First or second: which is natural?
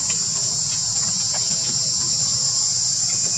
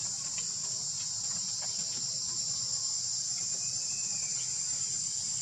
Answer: second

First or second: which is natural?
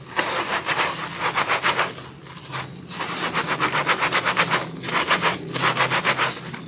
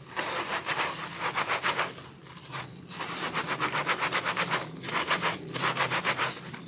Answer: first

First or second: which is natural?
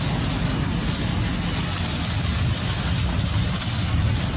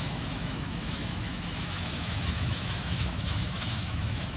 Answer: first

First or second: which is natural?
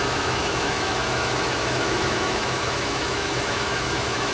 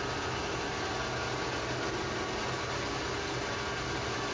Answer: second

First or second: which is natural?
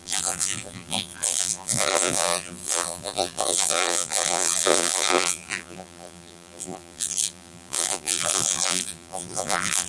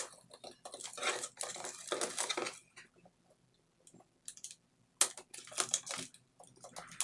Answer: second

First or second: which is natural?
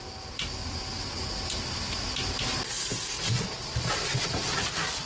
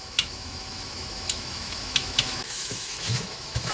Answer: first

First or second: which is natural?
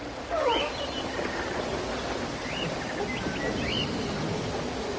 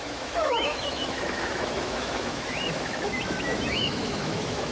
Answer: first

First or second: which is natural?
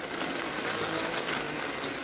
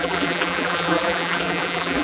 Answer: first